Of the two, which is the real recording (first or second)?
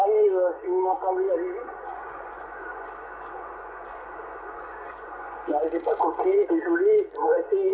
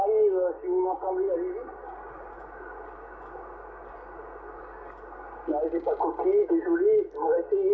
second